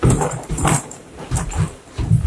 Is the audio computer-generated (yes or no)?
yes